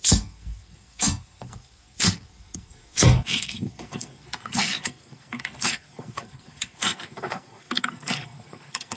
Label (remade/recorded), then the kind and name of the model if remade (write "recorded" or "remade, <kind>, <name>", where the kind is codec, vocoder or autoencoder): remade, codec, SNAC